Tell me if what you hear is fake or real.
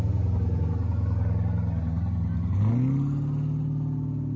real